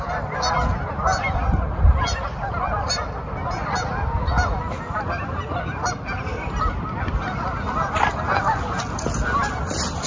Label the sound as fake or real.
real